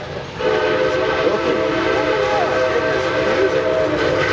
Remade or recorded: recorded